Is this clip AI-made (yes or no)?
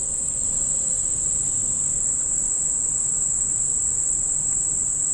no